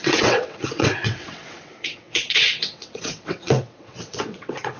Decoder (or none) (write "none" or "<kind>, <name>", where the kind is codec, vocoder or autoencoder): vocoder, WaveNeXt